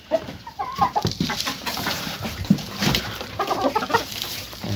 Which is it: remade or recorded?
remade